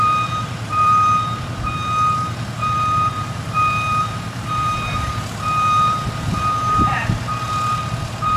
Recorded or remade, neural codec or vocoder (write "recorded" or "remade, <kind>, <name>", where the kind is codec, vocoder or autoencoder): remade, vocoder, BigVGAN v2